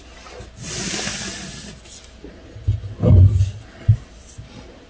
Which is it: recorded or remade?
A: recorded